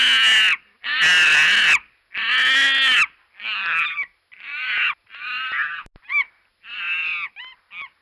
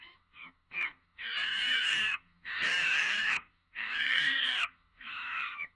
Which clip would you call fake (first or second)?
second